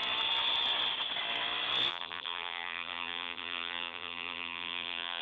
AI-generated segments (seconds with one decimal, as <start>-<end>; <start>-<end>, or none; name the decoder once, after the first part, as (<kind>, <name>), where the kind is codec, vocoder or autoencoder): 1.9-5.2 (vocoder, BigVGAN v2)